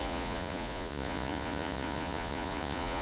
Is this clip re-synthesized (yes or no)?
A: yes